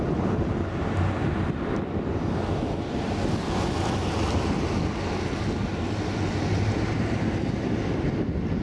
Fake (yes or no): no